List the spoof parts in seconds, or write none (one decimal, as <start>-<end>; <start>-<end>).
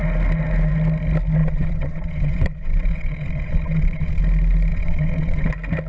1.4-4.2; 4.7-5.5